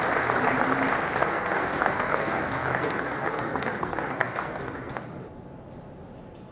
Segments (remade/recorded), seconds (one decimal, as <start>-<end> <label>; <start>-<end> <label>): 0.0-1.2 recorded; 1.2-5.1 remade; 5.1-6.5 recorded